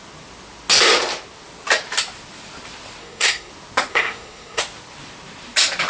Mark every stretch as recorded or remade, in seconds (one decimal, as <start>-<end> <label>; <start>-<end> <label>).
0.0-3.0 recorded; 3.0-3.5 remade; 3.5-3.9 recorded; 3.9-4.6 remade; 4.6-5.9 recorded